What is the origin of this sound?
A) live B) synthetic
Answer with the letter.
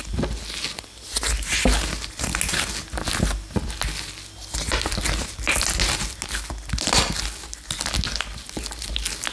A